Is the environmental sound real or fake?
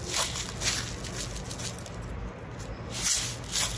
real